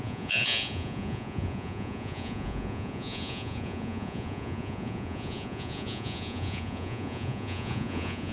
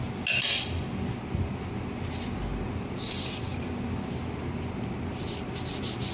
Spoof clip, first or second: first